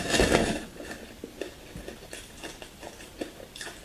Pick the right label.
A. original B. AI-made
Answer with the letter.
A